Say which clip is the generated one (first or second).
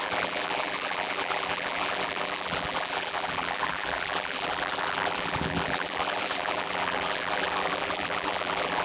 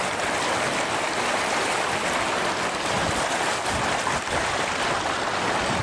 first